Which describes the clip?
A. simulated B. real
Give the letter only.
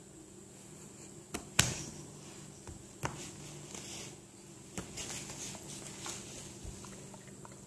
B